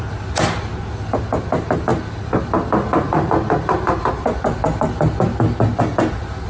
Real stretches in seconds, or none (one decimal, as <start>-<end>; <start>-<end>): 0.0-6.5

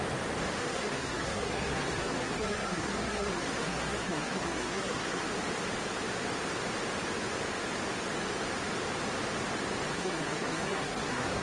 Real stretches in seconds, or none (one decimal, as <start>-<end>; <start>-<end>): 0.0-0.6; 5.2-9.9

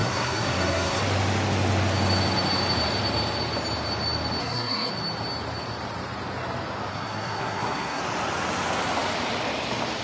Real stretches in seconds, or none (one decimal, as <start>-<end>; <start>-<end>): 1.0-4.4; 4.9-6.9; 8.0-10.0